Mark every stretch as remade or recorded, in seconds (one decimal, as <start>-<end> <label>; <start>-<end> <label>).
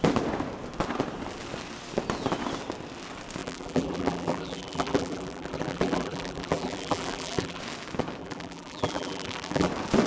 0.0-3.4 recorded; 3.4-7.6 remade; 7.6-8.2 recorded; 8.2-9.7 remade; 9.7-10.1 recorded